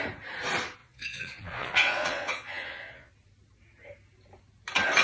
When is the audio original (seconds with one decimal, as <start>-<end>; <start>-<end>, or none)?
0.0-0.8; 3.1-5.0